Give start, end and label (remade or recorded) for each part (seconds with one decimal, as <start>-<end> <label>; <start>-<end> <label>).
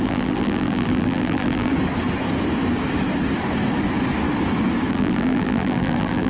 0.0-1.7 remade; 1.7-4.9 recorded; 4.9-6.3 remade